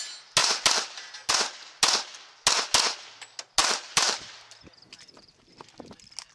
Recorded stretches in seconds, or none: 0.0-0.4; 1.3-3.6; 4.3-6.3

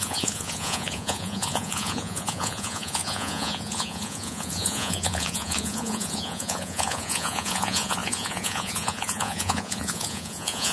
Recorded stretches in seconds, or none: none

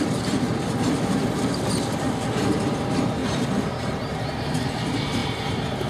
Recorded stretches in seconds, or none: 0.0-3.2; 4.7-5.2

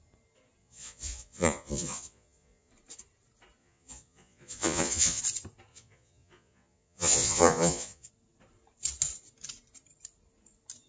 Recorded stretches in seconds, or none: 0.0-0.6; 2.7-3.6; 5.2-5.7; 8.1-10.9

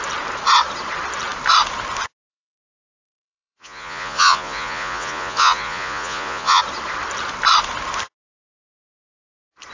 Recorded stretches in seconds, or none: 0.0-2.3; 6.6-9.7

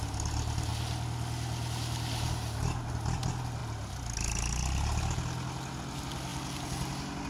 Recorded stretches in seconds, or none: 0.0-7.3

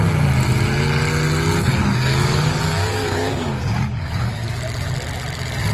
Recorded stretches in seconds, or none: 0.0-1.7; 4.5-5.7

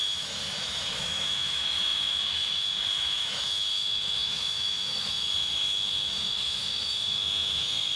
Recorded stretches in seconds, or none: none